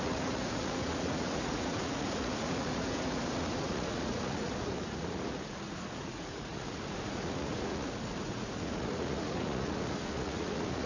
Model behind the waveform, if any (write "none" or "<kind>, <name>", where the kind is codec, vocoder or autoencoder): vocoder, Vocos